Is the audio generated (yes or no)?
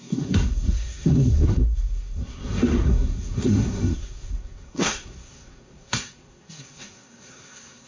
yes